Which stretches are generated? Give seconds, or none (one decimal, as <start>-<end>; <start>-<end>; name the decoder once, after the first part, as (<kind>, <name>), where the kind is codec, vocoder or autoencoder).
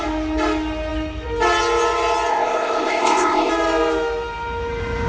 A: 2.3-3.5 (codec, ZipCodec)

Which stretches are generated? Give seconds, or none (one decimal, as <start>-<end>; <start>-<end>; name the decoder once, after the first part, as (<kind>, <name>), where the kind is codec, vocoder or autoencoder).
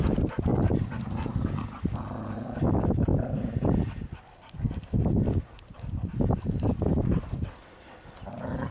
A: none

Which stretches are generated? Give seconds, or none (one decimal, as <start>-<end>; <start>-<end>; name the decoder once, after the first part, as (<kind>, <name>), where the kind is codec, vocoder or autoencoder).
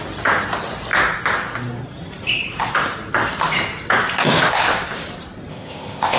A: 5.5-6.2 (codec, ZipCodec)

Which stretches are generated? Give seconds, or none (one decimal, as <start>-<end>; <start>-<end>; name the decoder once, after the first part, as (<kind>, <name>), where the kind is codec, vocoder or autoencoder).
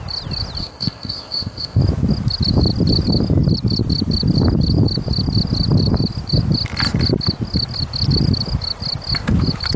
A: 0.6-1.8 (codec, ZipCodec)